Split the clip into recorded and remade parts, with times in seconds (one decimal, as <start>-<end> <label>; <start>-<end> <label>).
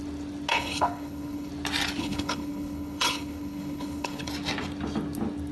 0.0-0.5 recorded; 0.5-1.5 remade; 1.5-2.0 recorded; 2.0-4.3 remade; 4.3-5.5 recorded